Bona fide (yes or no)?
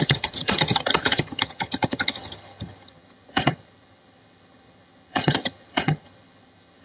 no